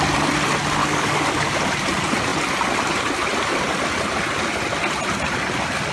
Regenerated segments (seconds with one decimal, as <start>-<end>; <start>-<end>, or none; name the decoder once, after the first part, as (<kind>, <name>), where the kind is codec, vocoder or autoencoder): 0.8-1.6 (codec, DAC)